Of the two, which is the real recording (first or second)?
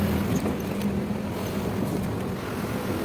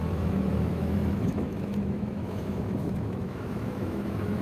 first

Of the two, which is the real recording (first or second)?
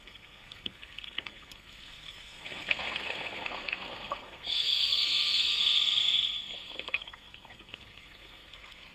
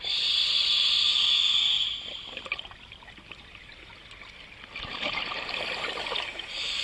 second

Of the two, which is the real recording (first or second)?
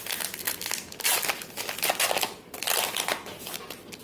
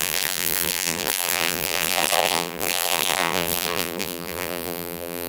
first